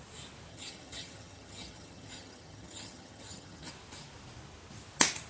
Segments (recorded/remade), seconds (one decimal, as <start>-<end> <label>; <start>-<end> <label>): 0.0-0.5 recorded; 0.5-3.7 remade; 3.7-5.3 recorded